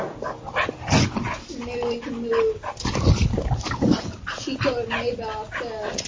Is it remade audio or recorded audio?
recorded